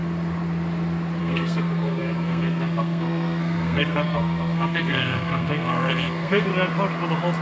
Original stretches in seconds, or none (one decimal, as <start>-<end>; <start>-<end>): 0.0-1.2; 6.5-7.4